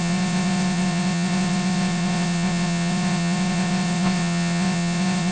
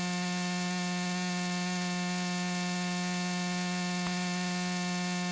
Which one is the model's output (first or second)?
first